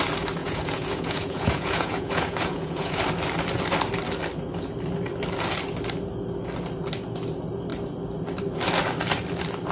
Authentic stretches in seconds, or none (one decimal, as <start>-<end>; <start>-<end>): 0.0-0.4; 3.0-9.7